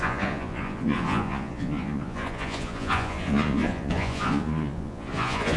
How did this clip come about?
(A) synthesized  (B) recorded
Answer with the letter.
A